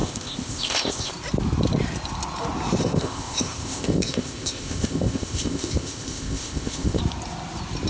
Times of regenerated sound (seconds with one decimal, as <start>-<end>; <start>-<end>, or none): 0.0-1.1; 2.8-7.0